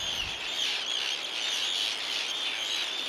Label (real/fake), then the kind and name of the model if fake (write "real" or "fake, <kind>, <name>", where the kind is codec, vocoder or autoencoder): real